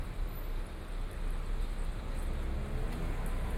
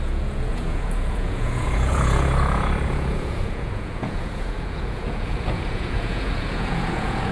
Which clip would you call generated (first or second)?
second